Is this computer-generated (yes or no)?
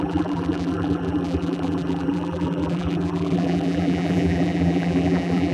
yes